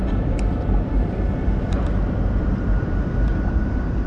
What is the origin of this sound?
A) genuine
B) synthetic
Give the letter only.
B